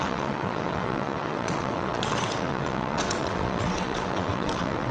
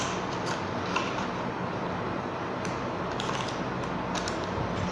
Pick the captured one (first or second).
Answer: second